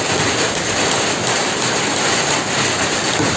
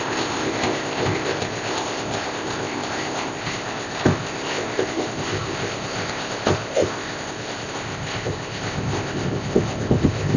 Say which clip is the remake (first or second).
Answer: second